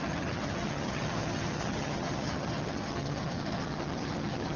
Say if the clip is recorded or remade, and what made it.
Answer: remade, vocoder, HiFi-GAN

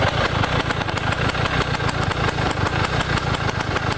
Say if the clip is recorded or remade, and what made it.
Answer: recorded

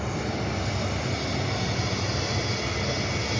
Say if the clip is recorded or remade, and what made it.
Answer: recorded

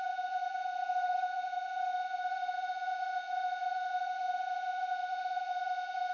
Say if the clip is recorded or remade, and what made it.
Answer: remade, vocoder, HiFi-GAN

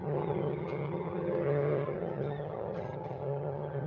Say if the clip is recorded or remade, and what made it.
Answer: remade, vocoder, HiFi-GAN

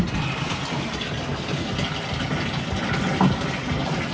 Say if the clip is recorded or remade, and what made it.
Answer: recorded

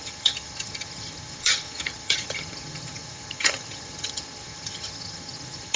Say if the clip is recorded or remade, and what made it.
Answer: remade, vocoder, HiFi-GAN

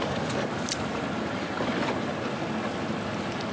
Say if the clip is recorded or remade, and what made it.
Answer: recorded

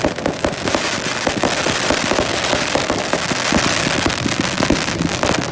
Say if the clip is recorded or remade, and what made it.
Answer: recorded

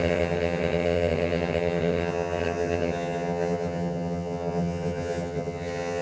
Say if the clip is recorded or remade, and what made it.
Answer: remade, vocoder, HiFi-GAN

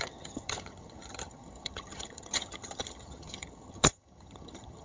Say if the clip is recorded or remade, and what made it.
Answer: remade, vocoder, HiFi-GAN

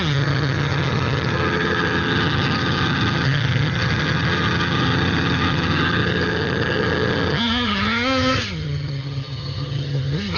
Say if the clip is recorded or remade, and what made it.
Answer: remade, vocoder, HiFi-GAN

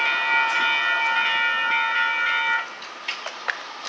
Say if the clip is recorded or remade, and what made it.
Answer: recorded